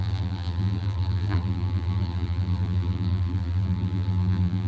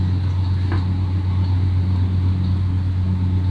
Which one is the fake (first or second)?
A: first